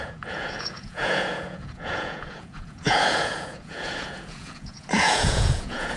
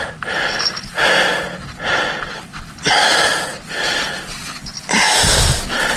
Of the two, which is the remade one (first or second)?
first